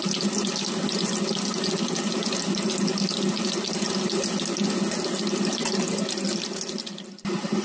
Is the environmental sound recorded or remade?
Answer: recorded